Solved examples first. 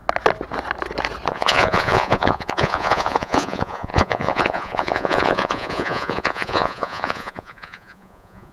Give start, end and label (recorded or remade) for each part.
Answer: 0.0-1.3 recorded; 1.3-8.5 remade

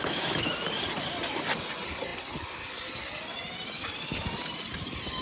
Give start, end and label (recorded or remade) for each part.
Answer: 0.0-0.5 remade; 0.5-5.2 recorded